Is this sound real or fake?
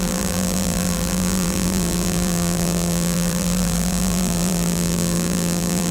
fake